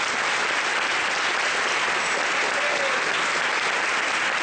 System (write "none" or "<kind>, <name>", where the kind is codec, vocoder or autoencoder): none